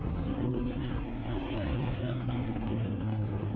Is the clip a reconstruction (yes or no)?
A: yes